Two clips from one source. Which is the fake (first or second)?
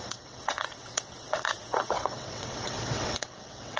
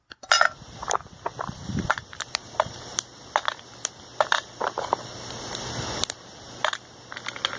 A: first